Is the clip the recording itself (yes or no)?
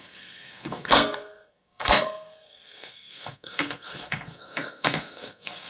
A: no